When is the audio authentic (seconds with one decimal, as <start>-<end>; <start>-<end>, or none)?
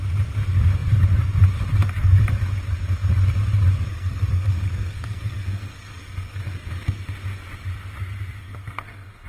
0.0-3.9; 7.0-8.4